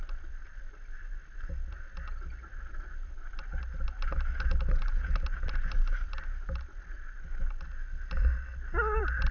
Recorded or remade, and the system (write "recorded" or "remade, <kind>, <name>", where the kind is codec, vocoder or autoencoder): recorded